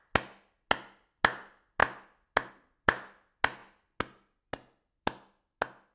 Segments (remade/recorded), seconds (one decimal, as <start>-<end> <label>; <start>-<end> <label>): 0.0-5.9 recorded